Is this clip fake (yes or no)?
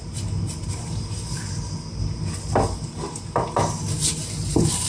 no